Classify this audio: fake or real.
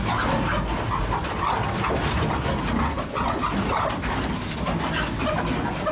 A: real